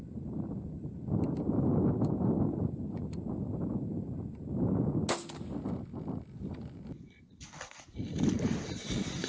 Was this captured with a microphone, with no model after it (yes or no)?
yes